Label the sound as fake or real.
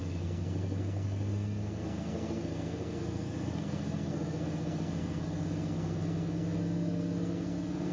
fake